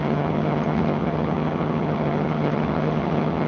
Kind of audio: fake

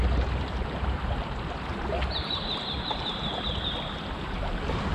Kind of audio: real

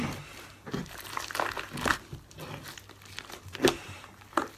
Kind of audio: real